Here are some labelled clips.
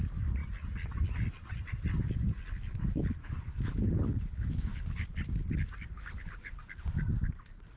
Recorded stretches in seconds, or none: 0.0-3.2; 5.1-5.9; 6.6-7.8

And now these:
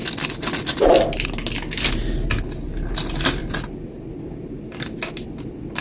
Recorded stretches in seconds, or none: 0.0-5.8

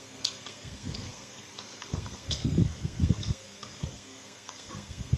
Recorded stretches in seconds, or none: none

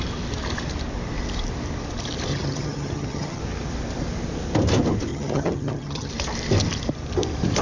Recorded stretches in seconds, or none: 0.0-2.3; 3.4-5.1; 6.1-7.6

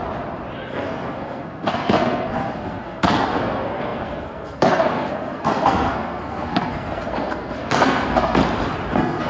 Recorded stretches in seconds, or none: 0.0-0.7; 8.4-8.9

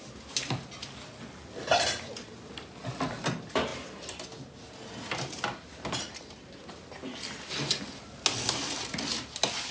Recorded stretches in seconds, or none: 0.0-9.7